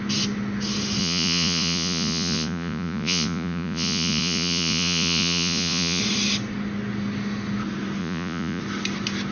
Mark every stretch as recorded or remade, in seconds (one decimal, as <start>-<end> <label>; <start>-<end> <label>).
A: 0.0-1.0 recorded; 1.0-6.0 remade; 6.0-8.0 recorded; 8.0-8.6 remade; 8.6-9.3 recorded